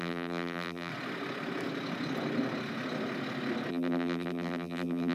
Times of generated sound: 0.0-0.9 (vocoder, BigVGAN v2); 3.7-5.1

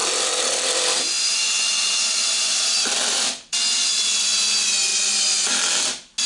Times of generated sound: 0.0-3.8 (vocoder, BigVGAN v2)